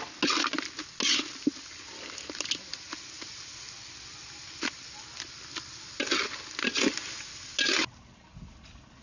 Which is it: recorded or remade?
recorded